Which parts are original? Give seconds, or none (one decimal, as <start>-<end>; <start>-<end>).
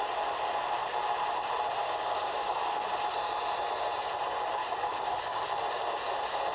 0.0-1.8; 2.9-4.6; 5.4-6.5